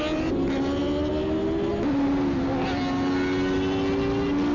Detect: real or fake real